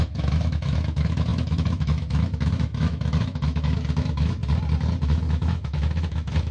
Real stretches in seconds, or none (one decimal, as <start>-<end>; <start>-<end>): 4.4-5.0